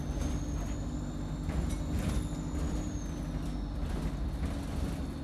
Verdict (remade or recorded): recorded